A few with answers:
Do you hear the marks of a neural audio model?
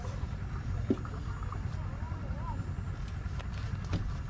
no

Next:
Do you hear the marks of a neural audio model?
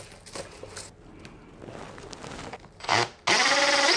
no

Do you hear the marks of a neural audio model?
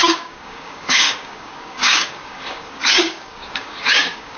yes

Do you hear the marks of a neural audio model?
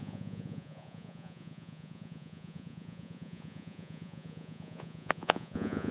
yes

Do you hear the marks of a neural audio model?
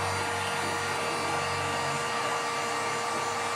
no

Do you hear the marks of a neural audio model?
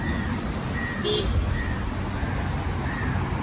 no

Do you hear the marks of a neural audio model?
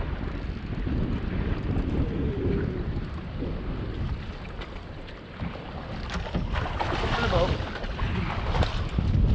no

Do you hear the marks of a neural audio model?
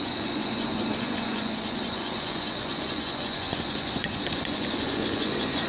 yes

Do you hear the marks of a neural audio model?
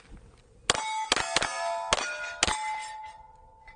no